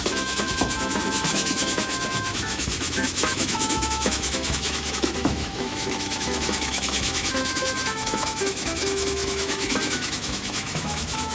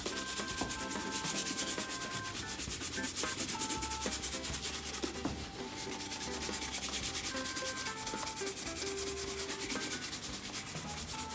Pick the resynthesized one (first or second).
first